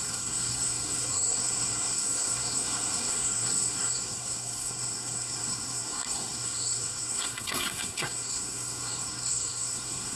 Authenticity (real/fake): fake